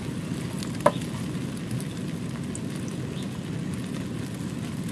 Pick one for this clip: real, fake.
real